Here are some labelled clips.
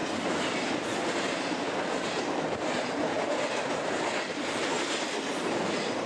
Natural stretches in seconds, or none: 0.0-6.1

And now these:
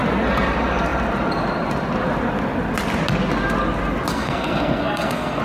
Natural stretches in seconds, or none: 0.0-4.1

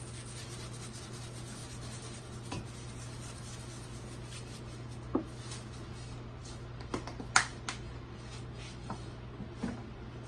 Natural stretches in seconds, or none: 0.0-10.3